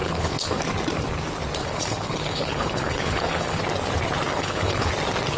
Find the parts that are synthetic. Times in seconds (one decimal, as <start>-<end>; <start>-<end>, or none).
0.0-0.6; 1.6-3.6; 4.3-4.9